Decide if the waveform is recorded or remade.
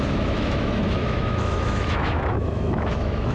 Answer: remade